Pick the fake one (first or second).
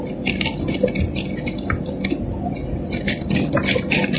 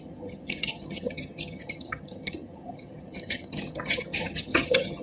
second